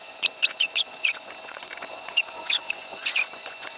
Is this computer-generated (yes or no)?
yes